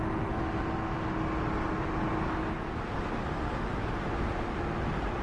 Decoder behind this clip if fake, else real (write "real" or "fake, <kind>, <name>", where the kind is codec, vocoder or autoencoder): real